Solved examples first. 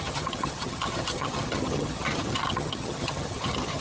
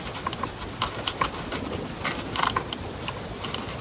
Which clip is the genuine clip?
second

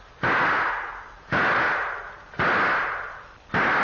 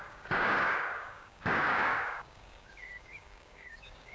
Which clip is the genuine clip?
first